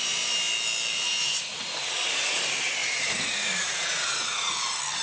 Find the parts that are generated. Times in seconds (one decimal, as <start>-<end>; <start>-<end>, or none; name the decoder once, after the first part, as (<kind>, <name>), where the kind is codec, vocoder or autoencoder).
0.9-2.4 (vocoder, Vocos); 2.8-4.5